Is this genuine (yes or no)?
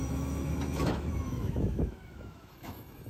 no